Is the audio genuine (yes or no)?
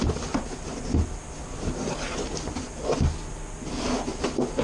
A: yes